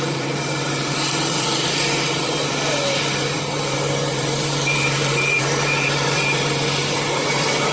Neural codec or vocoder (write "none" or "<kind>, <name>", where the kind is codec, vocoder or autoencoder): vocoder, BigVGAN v2